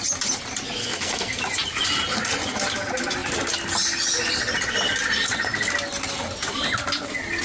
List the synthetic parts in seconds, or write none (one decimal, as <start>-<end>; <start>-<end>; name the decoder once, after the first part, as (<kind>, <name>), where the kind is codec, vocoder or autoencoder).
0.8-1.4 (codec, SNAC)